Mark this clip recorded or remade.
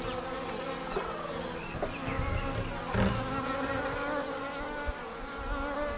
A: recorded